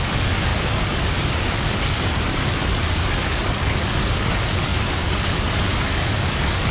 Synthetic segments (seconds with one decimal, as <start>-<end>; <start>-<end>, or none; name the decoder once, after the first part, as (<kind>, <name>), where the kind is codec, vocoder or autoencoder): 0.0-6.7 (codec, DAC)